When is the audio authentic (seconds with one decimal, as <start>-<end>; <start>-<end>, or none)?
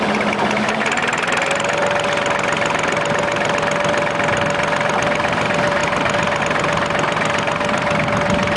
0.0-8.6